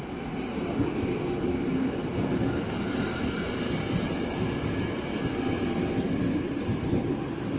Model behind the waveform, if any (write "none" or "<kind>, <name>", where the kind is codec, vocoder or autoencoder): none